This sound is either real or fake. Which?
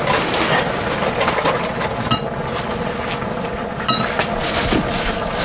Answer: real